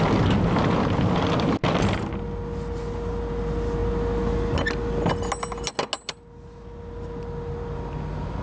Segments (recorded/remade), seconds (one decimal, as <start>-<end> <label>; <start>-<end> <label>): 0.0-8.4 recorded